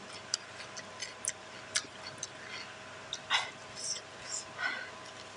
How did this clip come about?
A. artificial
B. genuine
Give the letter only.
B